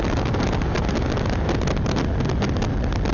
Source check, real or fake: real